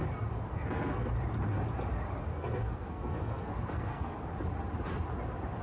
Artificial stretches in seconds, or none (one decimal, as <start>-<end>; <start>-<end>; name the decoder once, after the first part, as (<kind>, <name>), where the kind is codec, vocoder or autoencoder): 0.5-1.1 (codec, SNAC); 2.3-4.3